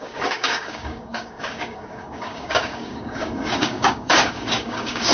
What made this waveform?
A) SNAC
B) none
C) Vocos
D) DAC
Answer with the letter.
D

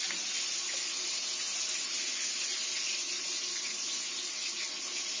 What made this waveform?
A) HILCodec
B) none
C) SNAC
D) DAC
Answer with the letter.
B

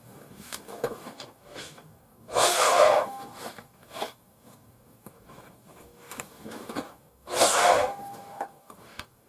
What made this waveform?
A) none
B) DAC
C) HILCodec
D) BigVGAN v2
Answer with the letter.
B